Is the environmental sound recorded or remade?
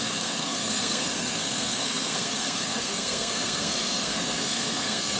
remade